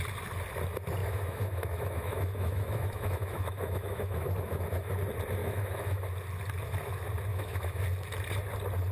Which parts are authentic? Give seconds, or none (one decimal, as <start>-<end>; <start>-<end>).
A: 0.0-1.0; 4.9-5.4; 6.0-7.3; 7.8-8.9